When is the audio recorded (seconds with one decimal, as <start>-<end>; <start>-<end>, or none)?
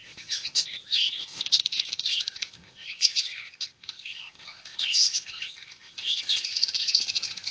none